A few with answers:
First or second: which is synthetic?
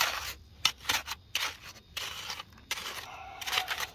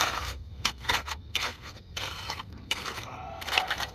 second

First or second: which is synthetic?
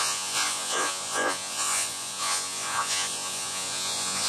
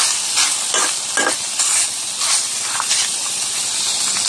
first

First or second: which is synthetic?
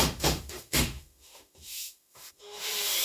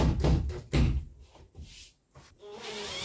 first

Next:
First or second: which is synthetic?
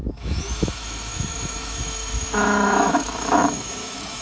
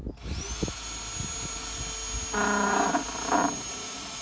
first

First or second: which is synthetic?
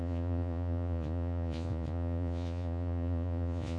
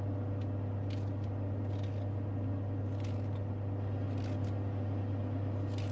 first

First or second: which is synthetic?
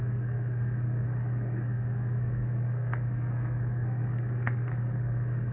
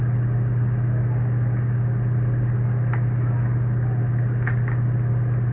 first